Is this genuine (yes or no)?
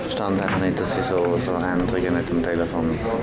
yes